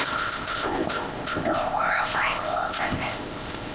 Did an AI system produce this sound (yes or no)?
yes